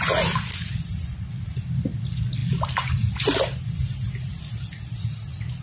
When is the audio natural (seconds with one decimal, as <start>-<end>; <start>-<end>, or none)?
0.0-5.6